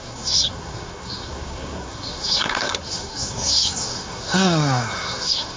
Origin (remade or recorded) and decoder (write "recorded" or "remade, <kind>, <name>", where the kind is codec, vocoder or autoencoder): remade, codec, SNAC